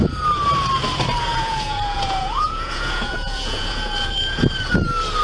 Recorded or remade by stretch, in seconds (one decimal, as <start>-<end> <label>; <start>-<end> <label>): 0.0-1.3 recorded; 1.3-4.4 remade; 4.4-5.2 recorded